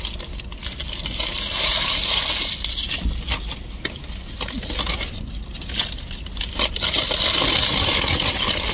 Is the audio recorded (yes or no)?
yes